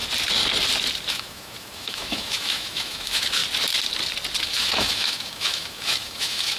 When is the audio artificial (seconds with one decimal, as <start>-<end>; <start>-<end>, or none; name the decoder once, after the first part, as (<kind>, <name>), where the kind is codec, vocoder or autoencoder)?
1.1-3.4 (autoencoder, DAC-VAE); 4.4-6.6